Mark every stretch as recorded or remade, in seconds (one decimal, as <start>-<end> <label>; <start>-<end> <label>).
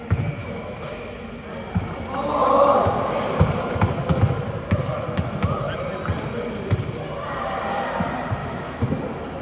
0.0-0.4 recorded; 0.4-0.9 remade; 0.9-8.4 recorded; 8.4-9.0 remade; 9.0-9.4 recorded